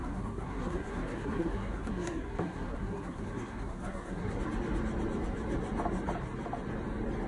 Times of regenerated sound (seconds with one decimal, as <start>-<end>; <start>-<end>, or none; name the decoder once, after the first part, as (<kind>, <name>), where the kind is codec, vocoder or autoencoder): 0.0-4.4 (codec, SNAC)